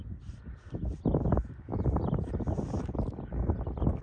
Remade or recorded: recorded